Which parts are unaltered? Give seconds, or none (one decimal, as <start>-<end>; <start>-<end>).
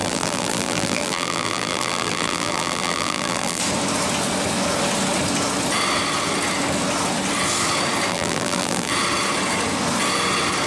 3.6-8.1; 8.9-10.7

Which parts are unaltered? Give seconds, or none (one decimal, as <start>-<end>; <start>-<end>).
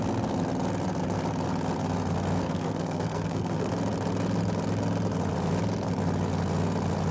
0.0-2.4; 3.7-7.1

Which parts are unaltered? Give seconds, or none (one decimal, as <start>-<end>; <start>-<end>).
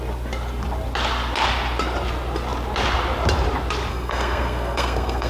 0.0-3.9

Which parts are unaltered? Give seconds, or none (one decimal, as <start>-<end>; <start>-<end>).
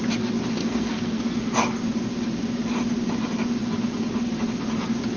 0.0-0.6; 1.2-5.2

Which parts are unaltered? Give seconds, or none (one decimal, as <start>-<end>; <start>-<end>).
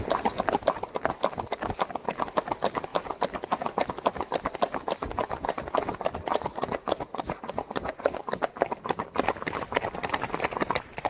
0.0-6.3; 8.2-11.1